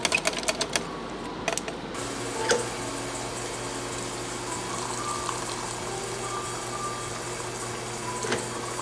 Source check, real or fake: real